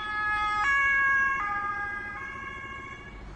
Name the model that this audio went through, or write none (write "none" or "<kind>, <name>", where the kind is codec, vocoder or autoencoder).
none